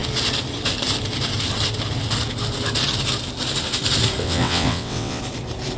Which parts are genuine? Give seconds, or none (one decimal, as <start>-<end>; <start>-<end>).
0.0-4.2; 5.2-5.8